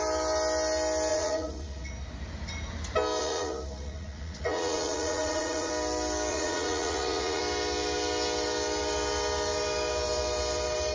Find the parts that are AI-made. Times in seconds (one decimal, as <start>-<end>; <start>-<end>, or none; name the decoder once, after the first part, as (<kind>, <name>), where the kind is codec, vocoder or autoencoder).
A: 1.1-1.9 (vocoder, Vocos); 3.2-5.7; 6.3-7.4